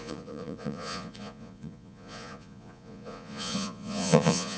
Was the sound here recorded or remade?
remade